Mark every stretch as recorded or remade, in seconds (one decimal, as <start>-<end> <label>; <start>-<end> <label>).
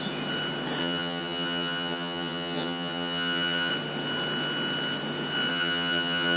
0.0-0.8 recorded; 0.8-3.7 remade; 3.7-5.5 recorded; 5.5-6.4 remade